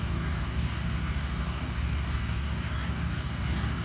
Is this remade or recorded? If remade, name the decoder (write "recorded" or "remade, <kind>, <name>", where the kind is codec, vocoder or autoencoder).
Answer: remade, codec, DAC